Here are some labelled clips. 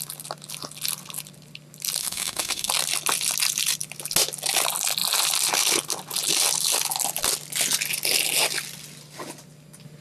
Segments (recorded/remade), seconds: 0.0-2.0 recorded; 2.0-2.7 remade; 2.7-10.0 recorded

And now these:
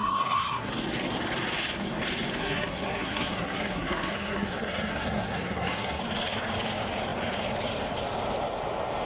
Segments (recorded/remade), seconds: 0.0-0.7 remade; 0.7-2.4 recorded; 2.4-6.0 remade; 6.0-9.1 recorded

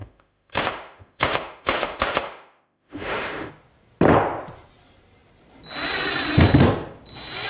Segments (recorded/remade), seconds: 0.0-3.5 remade; 3.5-7.5 recorded

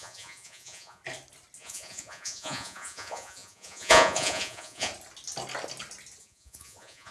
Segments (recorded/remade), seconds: 0.0-1.0 remade; 1.0-1.6 recorded; 1.6-4.9 remade; 4.9-6.2 recorded; 6.2-7.1 remade

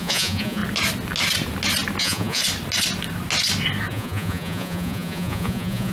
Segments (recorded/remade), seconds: 0.0-0.6 remade; 0.6-2.0 recorded; 2.0-2.4 remade; 2.4-3.9 recorded; 3.9-5.9 remade